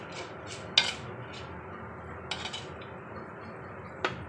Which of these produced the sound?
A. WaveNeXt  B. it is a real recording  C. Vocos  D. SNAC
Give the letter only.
B